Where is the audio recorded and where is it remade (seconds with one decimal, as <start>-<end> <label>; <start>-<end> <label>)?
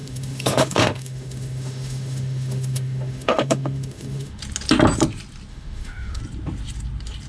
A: 0.0-4.4 remade; 4.4-5.5 recorded; 5.5-6.2 remade; 6.2-7.3 recorded